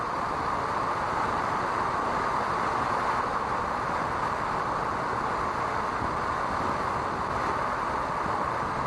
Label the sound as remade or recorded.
recorded